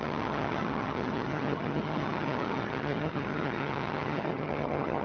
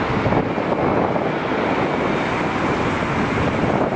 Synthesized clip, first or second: first